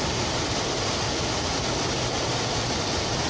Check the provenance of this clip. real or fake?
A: real